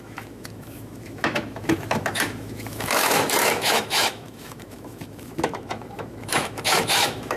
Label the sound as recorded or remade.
remade